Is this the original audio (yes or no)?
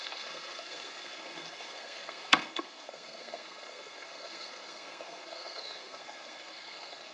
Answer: no